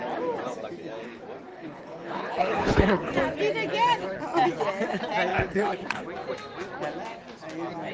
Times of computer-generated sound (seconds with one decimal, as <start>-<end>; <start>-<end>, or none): 1.5-3.1; 5.3-6.0

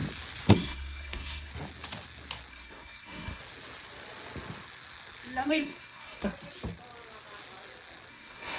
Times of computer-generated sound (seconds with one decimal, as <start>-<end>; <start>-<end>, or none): 0.5-1.5; 2.5-3.4; 5.5-6.2; 8.1-8.6

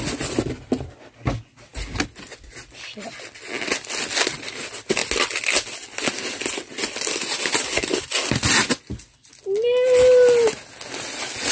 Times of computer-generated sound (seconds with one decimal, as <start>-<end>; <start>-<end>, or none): none

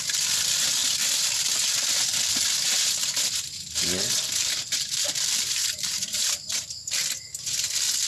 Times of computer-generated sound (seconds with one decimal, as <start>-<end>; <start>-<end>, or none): 4.4-7.0